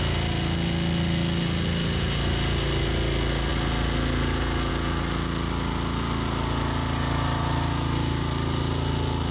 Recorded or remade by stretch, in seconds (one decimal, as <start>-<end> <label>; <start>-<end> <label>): 0.0-9.3 recorded